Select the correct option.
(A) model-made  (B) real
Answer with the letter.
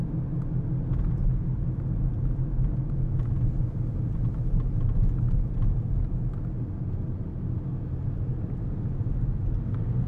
B